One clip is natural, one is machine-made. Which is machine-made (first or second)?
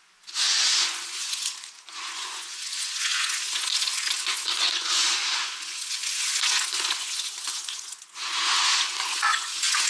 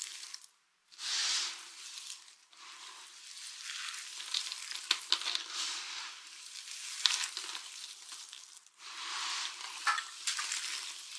first